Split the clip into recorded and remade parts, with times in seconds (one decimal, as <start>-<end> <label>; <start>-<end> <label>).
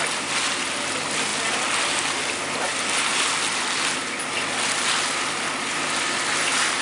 0.0-6.8 recorded